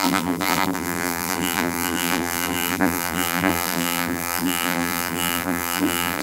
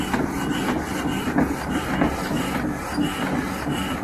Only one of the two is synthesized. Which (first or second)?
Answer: first